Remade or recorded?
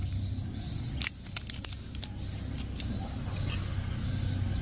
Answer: recorded